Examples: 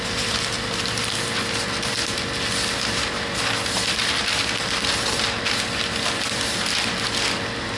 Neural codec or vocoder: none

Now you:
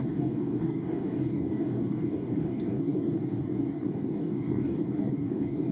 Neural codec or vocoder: codec, DAC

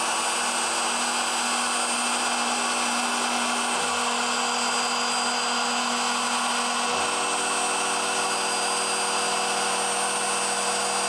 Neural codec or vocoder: none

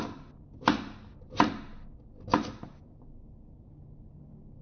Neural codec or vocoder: none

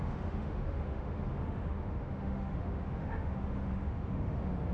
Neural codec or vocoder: autoencoder, DAC-VAE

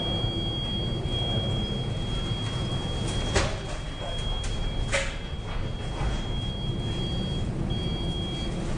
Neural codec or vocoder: none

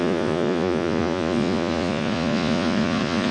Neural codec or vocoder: vocoder, Vocos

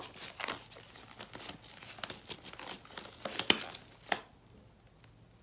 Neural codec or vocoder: none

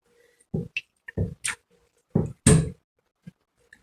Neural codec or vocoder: none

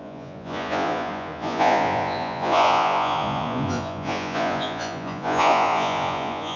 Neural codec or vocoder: vocoder, Vocos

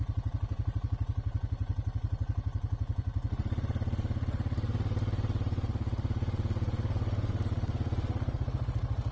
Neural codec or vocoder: vocoder, BigVGAN v2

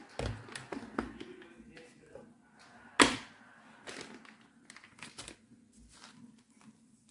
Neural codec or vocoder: none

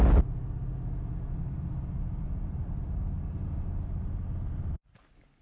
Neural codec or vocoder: none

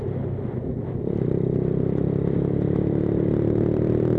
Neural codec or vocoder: vocoder, BigVGAN v2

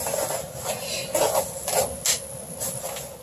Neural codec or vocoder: none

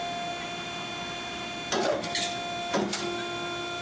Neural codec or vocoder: none